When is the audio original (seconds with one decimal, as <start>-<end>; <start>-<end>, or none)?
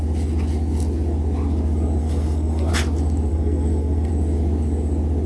0.0-2.0; 2.7-3.3; 4.1-5.3